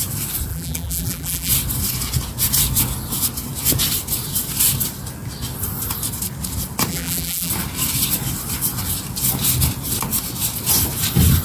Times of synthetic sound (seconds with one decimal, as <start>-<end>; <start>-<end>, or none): 0.5-1.5; 6.9-7.5